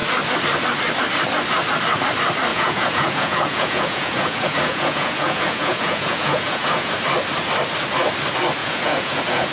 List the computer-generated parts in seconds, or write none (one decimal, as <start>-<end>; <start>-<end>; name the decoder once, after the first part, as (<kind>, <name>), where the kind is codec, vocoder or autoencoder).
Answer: 2.5-6.9 (vocoder, Vocos); 8.6-9.5